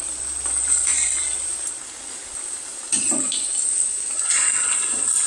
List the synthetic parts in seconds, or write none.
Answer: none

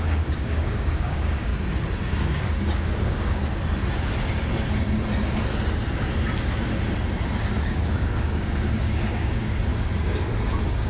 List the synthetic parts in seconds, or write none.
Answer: 0.0-1.5 (codec, DAC); 2.1-3.4; 7.6-10.9

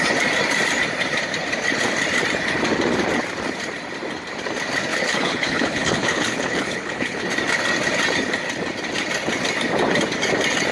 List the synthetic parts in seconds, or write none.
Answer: 4.9-7.2 (codec, HILCodec)

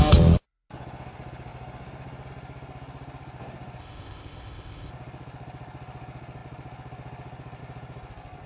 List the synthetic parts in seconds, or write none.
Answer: 3.8-4.9 (codec, ZipCodec)

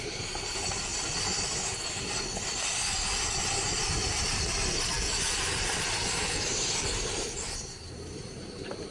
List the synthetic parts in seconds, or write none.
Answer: 0.0-0.9 (vocoder, BigVGAN v2); 3.4-8.9